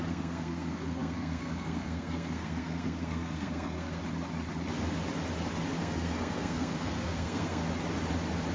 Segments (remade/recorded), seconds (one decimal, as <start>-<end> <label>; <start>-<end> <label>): 0.0-4.0 remade; 4.0-5.8 recorded; 5.8-7.6 remade; 7.6-8.5 recorded